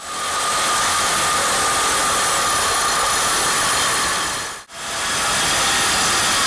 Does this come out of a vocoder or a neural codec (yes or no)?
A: no